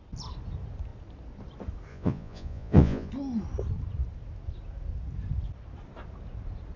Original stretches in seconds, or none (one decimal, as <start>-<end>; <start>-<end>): 0.0-1.9; 3.1-6.8